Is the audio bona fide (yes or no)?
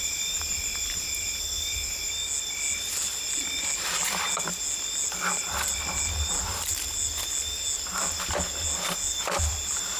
yes